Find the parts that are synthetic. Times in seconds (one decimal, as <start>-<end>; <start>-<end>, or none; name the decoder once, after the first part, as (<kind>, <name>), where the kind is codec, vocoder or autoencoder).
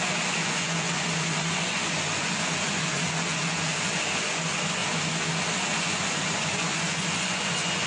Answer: 0.0-7.9 (vocoder, Vocos)